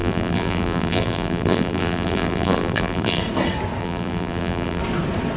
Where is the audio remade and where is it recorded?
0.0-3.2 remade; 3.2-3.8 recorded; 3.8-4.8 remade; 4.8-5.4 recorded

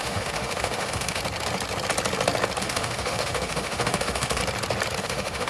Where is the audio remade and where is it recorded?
0.0-1.2 remade; 1.2-2.6 recorded; 2.6-4.4 remade; 4.4-5.0 recorded; 5.0-5.5 remade

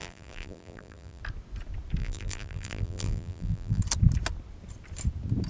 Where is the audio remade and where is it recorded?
0.0-1.2 remade; 1.2-2.0 recorded; 2.0-3.8 remade; 3.8-5.5 recorded